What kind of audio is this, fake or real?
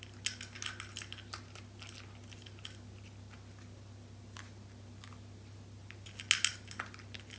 real